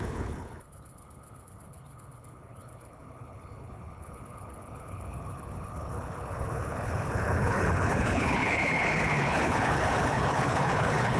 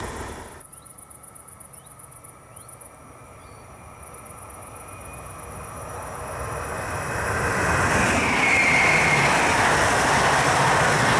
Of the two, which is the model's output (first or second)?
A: first